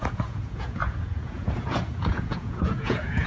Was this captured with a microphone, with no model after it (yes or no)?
no